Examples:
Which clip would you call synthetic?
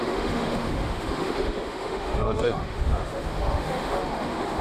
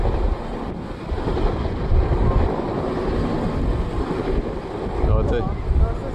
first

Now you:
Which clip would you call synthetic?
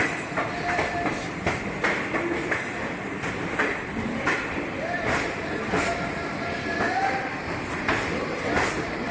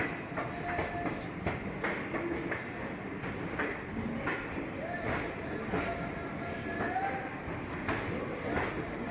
first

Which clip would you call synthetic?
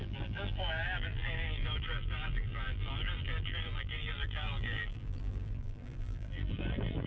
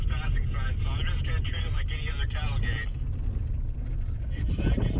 first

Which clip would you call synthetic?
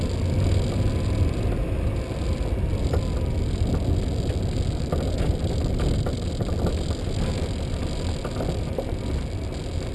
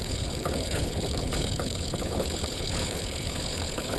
second